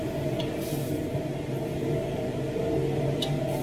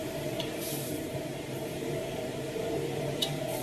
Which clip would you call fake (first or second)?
second